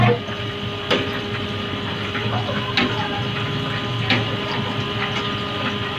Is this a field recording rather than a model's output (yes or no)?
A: yes